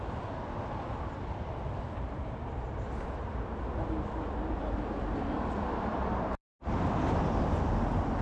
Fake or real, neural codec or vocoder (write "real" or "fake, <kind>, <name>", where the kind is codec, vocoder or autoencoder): fake, vocoder, BigVGAN v2